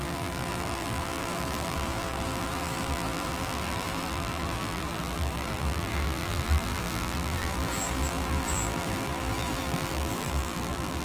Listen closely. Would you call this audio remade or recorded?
remade